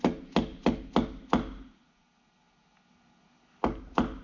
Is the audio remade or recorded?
recorded